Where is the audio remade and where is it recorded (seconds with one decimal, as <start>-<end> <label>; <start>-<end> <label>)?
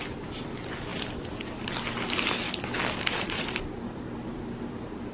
0.0-5.1 recorded